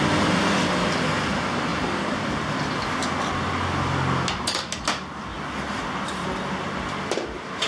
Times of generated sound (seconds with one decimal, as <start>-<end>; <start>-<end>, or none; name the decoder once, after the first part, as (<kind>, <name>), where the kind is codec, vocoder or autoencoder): none